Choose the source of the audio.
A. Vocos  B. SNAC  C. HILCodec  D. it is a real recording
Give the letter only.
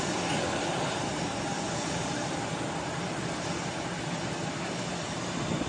D